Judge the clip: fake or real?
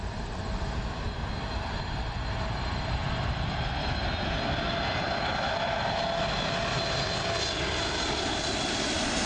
real